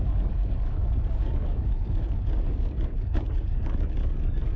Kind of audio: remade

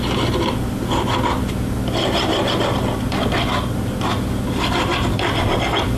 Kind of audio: recorded